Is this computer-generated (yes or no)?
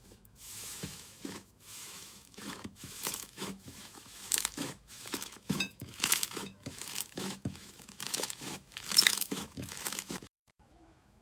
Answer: yes